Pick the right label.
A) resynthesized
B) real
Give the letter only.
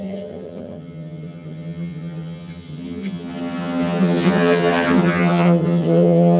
A